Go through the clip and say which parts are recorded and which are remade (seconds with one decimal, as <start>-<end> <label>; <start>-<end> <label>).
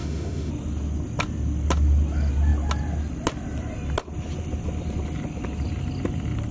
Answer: 0.0-0.5 remade; 0.5-6.5 recorded